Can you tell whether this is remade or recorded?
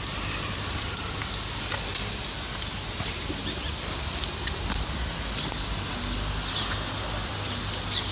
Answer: recorded